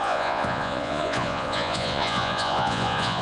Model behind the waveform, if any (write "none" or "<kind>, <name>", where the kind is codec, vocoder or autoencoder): vocoder, Vocos